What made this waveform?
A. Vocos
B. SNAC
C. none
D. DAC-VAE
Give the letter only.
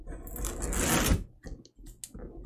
C